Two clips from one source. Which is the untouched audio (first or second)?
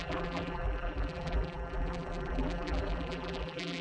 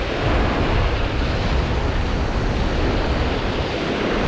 second